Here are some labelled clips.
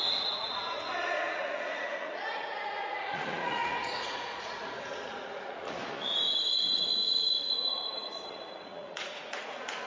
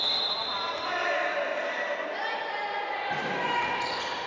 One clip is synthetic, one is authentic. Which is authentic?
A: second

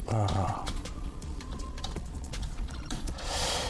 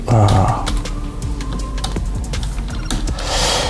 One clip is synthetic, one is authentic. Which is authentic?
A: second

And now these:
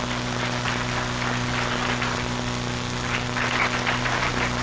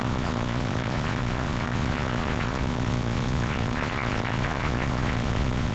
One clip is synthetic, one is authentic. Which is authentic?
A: first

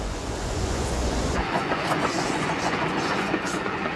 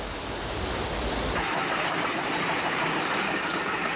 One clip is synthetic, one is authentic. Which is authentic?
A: second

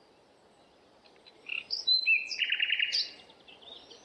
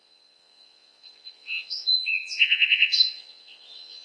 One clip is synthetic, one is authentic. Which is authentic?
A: first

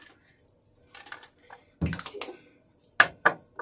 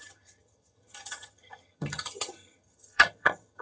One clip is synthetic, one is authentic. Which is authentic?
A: first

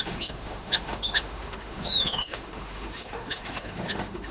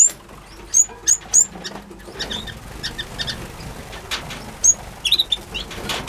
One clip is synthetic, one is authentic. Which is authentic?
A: second